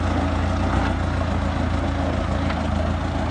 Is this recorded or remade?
recorded